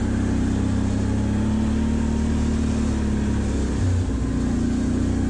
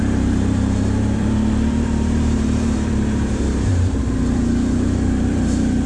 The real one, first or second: first